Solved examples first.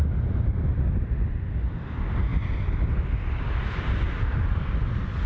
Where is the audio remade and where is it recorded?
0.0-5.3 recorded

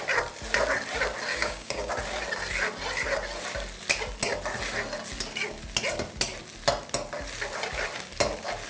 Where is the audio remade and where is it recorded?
0.0-1.3 recorded; 1.3-1.9 remade; 1.9-8.7 recorded

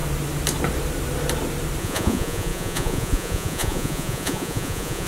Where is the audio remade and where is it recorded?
0.0-1.8 recorded; 1.8-5.1 remade